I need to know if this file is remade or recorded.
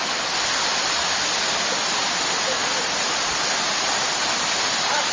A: recorded